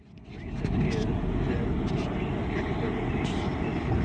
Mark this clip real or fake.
real